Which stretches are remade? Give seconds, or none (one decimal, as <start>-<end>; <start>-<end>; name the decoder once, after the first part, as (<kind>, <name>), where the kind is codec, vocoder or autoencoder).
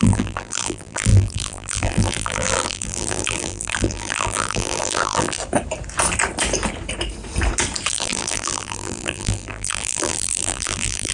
0.0-5.4 (vocoder, BigVGAN v2); 7.9-11.1